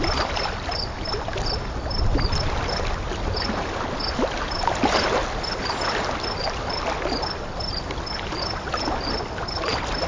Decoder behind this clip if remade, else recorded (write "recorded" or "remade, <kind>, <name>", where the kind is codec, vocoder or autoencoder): recorded